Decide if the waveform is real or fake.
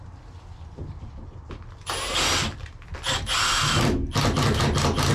real